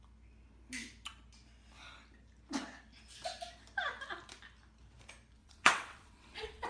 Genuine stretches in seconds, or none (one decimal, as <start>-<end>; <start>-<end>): 0.0-5.4